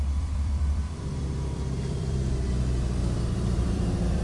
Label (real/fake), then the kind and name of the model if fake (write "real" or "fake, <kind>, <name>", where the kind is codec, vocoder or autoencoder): fake, vocoder, BigVGAN v2